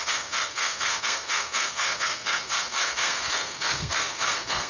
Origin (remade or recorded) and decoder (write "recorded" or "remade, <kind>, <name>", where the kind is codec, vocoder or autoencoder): remade, codec, SNAC